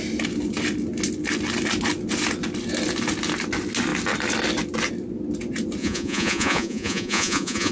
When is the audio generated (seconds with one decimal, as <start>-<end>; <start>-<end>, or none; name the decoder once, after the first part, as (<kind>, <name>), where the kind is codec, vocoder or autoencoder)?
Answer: 5.8-7.7 (vocoder, Vocos)